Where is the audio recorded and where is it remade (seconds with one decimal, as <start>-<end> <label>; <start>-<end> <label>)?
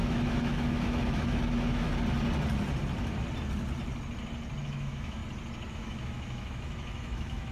0.0-1.9 remade; 1.9-4.6 recorded; 4.6-5.2 remade; 5.2-5.7 recorded; 5.7-7.5 remade